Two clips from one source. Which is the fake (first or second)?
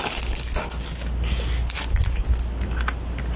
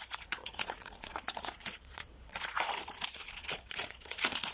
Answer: second